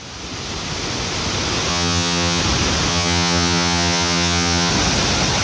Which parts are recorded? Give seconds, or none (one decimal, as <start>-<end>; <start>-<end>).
0.0-1.7; 2.4-2.9; 4.7-5.4